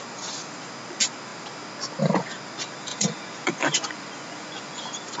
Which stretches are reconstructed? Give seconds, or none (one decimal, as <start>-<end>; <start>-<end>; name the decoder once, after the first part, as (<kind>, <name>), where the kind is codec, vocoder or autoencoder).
2.9-4.8 (vocoder, Vocos)